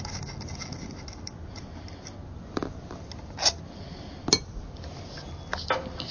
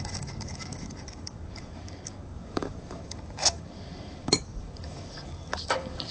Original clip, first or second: first